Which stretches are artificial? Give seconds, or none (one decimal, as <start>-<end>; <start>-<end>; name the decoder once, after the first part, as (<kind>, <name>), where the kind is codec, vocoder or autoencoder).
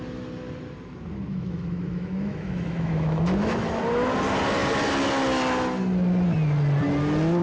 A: 1.3-3.8 (autoencoder, DAC-VAE)